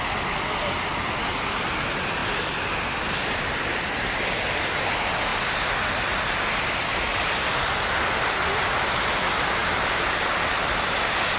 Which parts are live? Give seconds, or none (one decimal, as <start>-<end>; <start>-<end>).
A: 0.0-11.4